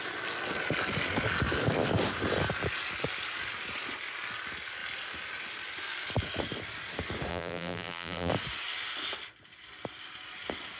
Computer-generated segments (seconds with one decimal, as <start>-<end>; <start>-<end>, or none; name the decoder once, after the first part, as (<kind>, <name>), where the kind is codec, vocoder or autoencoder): 7.3-8.3 (vocoder, BigVGAN v2)